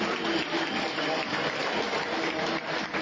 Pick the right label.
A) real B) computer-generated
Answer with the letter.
A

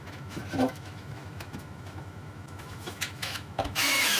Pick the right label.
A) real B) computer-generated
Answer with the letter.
B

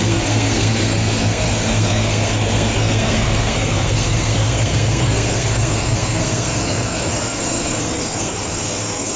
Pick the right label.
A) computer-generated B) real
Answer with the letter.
A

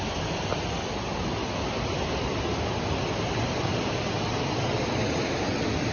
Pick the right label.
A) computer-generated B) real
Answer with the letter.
B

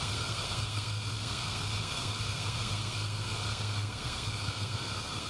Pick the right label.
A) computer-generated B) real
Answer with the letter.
A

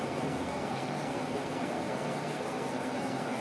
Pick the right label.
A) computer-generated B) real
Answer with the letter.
A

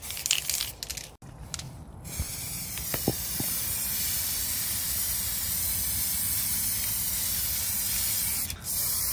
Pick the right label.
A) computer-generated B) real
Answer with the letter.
B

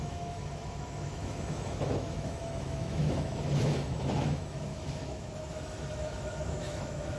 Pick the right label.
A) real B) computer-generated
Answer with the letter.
B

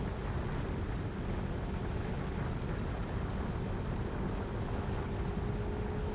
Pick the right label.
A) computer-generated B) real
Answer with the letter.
B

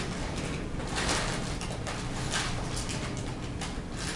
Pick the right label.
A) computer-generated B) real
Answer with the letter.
B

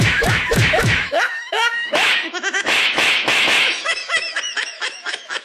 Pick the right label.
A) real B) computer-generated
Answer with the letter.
B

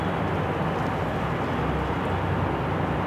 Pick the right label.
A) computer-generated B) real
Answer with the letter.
B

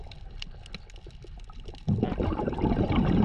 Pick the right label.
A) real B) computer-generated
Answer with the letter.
A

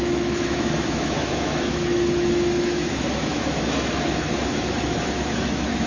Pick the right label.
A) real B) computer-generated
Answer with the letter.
B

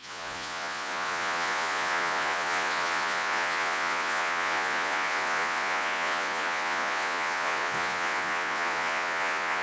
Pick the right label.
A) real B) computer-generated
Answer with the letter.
B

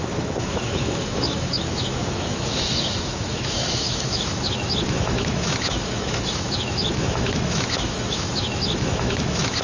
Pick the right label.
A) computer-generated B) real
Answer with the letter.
A